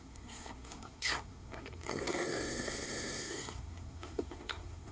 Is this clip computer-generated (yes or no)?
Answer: yes